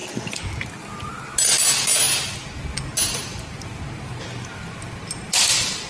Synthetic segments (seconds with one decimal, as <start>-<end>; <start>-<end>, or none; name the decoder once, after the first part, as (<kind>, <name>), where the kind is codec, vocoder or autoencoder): 0.0-0.7 (vocoder, BigVGAN v2); 3.3-4.2